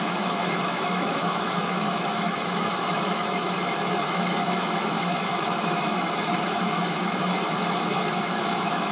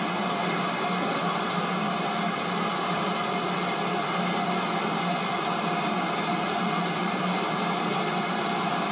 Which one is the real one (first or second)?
second